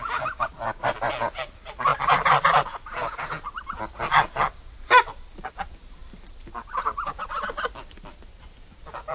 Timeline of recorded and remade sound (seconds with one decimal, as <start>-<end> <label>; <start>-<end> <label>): 0.0-9.1 recorded